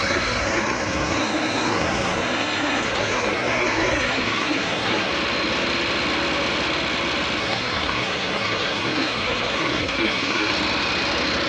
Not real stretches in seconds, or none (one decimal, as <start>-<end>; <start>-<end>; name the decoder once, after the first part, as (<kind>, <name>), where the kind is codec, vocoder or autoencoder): 0.0-5.1 (codec, SNAC); 7.4-10.5

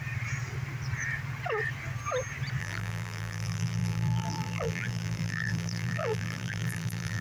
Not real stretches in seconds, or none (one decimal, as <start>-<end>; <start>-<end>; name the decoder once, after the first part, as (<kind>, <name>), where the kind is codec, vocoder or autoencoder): 2.6-7.2 (vocoder, BigVGAN v2)